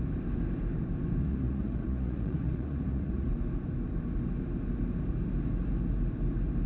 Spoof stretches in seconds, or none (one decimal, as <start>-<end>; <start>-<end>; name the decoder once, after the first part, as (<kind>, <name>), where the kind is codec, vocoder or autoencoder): 1.2-3.3 (vocoder, Vocos)